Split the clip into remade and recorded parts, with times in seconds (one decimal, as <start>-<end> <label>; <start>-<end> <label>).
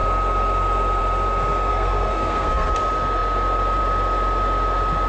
0.0-1.7 recorded; 1.7-2.7 remade; 2.7-5.1 recorded